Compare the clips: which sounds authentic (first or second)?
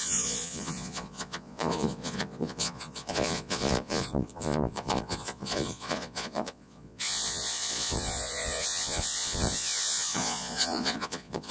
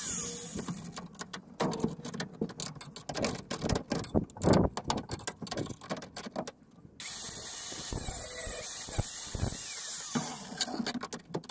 second